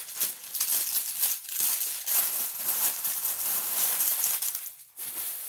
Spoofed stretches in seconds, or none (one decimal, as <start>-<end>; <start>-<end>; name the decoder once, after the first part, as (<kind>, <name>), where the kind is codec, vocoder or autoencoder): none